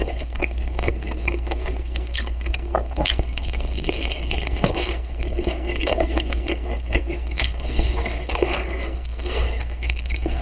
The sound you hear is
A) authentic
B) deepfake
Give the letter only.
B